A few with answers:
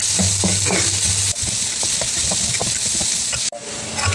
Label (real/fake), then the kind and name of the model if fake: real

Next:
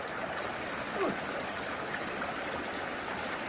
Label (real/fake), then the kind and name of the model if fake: real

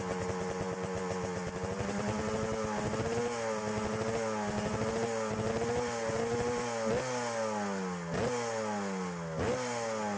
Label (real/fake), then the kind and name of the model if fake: real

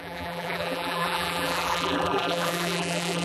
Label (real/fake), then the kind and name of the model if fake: fake, vocoder, BigVGAN v2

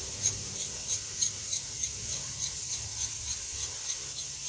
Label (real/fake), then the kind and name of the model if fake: real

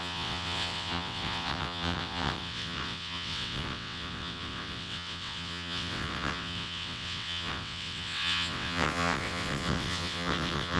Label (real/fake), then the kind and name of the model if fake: fake, vocoder, WaveNeXt